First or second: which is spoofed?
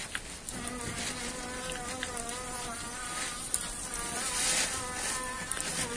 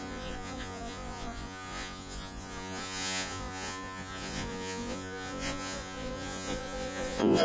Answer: second